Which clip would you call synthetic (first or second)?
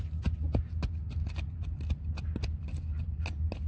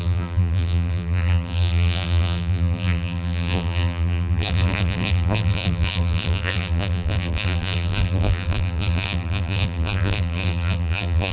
second